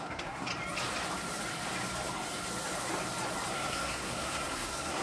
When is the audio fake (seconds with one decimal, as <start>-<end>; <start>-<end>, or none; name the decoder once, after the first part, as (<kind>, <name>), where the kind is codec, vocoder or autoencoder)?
0.0-0.5 (codec, SNAC); 3.5-5.0